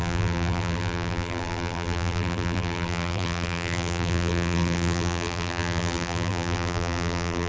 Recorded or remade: remade